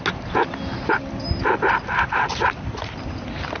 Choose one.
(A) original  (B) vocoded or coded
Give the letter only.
A